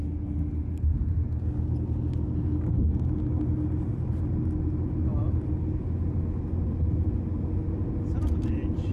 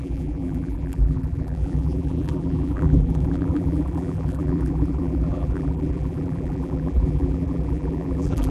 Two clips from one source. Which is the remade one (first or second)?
second